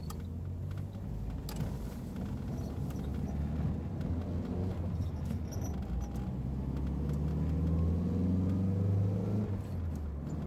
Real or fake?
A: real